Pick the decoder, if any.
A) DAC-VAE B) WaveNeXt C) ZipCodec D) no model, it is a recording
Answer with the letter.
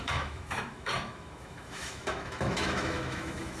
A